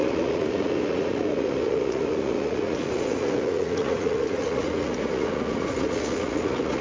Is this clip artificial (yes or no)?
yes